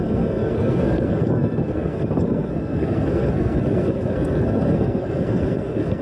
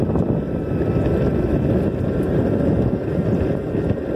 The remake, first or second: first